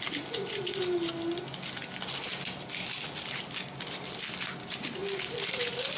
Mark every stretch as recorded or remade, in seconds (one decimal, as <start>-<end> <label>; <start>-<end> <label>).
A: 0.0-6.0 recorded